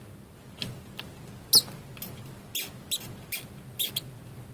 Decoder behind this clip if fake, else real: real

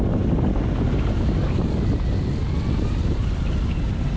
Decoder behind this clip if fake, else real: real